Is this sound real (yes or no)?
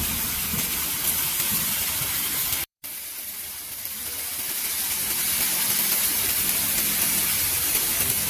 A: no